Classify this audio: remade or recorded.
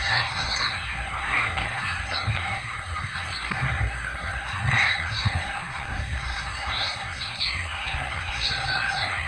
remade